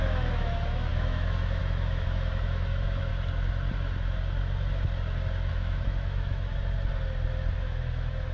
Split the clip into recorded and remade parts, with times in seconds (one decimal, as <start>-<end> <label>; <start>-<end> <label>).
0.0-3.1 remade; 3.1-5.5 recorded; 5.5-6.5 remade; 6.5-7.6 recorded; 7.6-8.3 remade